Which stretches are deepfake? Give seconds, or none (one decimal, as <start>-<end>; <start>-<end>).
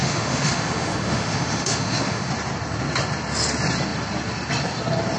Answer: 0.0-2.3